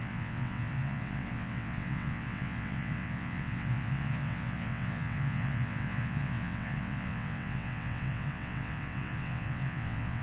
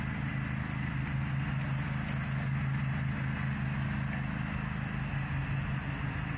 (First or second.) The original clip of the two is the second